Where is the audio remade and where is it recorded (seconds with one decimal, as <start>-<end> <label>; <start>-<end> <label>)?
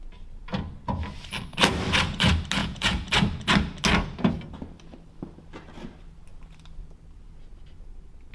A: 0.0-2.6 recorded; 2.6-3.1 remade; 3.1-8.3 recorded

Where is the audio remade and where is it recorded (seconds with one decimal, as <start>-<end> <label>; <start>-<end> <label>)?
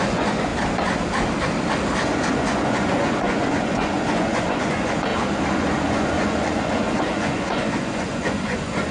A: 0.0-0.5 remade; 0.5-2.3 recorded; 2.3-5.1 remade; 5.1-5.6 recorded; 5.6-8.9 remade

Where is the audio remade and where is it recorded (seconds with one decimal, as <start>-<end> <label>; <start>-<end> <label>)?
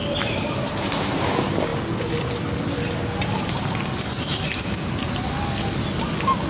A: 0.0-1.2 remade; 1.2-6.5 recorded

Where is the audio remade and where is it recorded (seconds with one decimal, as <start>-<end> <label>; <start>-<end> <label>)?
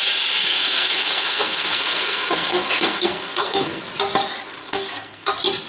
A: 0.0-0.4 recorded; 0.4-3.8 remade; 3.8-4.6 recorded; 4.6-5.3 remade; 5.3-5.7 recorded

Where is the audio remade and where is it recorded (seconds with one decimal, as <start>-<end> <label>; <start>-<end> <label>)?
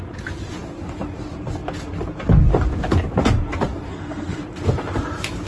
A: 0.0-3.9 recorded; 3.9-4.4 remade; 4.4-5.5 recorded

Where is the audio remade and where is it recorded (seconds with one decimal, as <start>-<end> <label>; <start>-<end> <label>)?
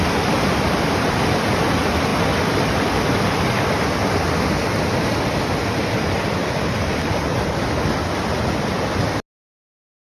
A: 0.0-6.4 recorded; 6.4-7.2 remade; 7.2-10.1 recorded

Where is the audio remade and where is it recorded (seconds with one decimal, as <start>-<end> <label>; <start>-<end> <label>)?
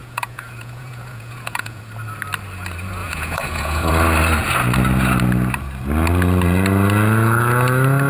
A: 0.0-1.8 remade; 1.8-3.0 recorded; 3.0-3.9 remade; 3.9-8.1 recorded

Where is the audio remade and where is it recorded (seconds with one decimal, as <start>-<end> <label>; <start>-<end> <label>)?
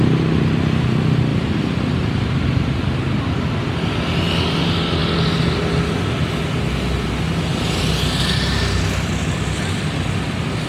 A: 0.0-1.3 recorded; 1.3-2.3 remade; 2.3-7.5 recorded; 7.5-8.2 remade; 8.2-10.7 recorded